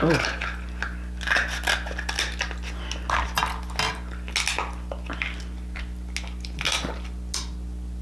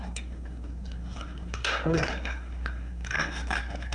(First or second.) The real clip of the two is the first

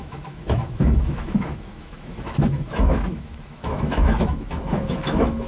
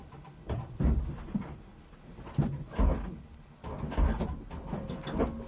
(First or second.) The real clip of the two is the second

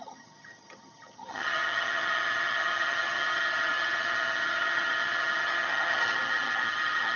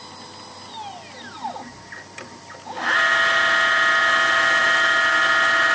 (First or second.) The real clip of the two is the second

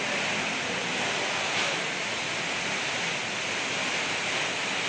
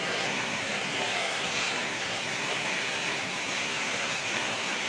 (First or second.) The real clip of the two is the first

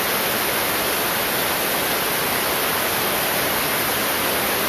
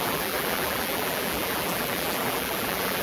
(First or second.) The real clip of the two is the first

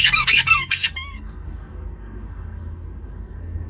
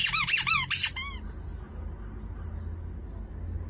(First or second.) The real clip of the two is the second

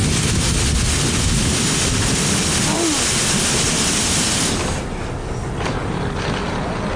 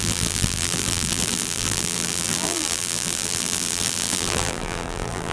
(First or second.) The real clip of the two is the first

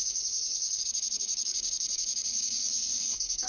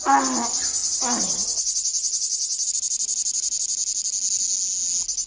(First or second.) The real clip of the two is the second